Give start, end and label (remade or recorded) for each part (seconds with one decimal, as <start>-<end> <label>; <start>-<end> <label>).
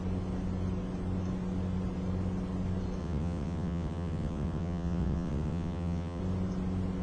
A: 0.0-3.0 recorded; 3.0-6.2 remade; 6.2-7.0 recorded